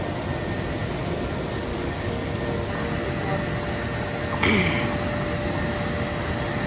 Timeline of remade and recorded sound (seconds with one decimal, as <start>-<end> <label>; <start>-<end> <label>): 0.0-1.7 recorded; 1.7-2.4 remade; 2.4-6.7 recorded